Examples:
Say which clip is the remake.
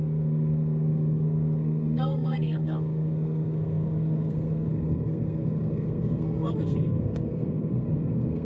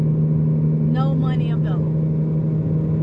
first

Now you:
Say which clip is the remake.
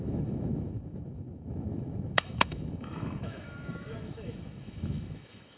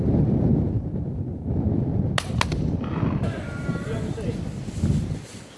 first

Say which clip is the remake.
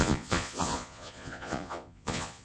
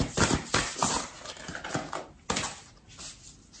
first